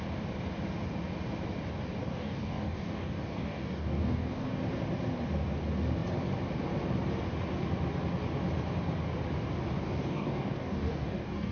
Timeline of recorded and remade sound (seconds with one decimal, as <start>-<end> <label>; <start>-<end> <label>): 0.0-2.0 recorded; 2.0-4.6 remade; 4.6-9.8 recorded; 9.8-11.5 remade